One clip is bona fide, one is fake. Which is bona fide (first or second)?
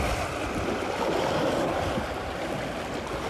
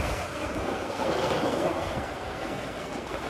first